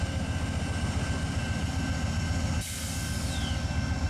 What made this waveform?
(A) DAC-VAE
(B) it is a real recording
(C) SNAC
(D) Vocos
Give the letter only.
B